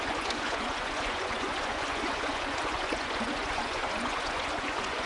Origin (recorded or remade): remade